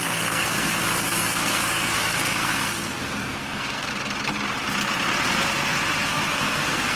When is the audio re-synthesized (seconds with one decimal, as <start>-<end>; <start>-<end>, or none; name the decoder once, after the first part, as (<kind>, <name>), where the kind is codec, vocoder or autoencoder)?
0.0-3.9 (codec, SNAC); 6.0-7.0